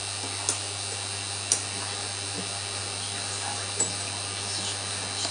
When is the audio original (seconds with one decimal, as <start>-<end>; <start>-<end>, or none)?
0.0-5.3